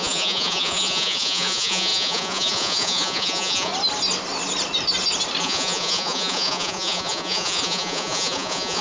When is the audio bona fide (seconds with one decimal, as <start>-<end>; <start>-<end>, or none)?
3.7-5.4